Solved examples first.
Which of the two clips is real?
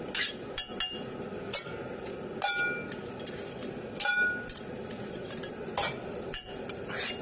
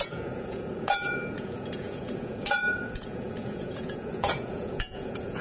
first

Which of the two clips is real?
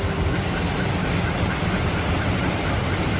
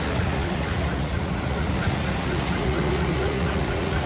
first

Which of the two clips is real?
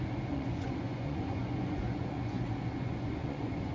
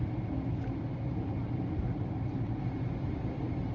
second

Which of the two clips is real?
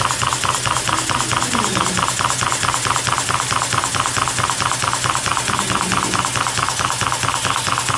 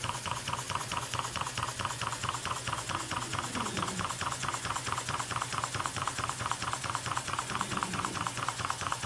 first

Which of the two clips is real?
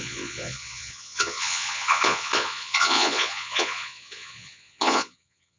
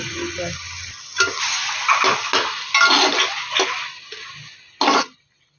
second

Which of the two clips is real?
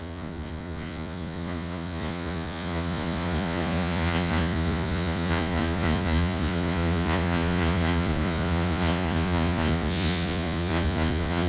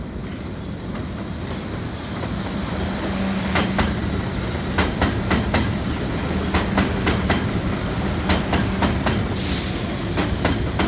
second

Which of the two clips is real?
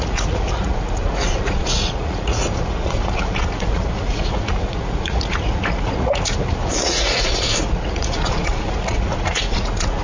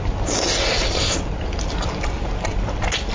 second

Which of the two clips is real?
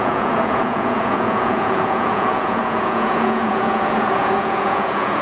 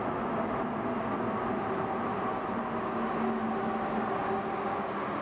second